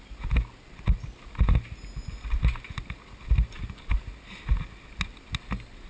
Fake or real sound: real